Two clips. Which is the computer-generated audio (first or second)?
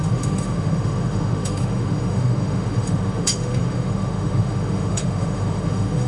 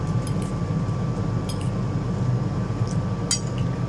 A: first